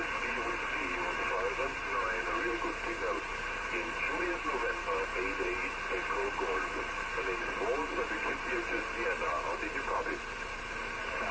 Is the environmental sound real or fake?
real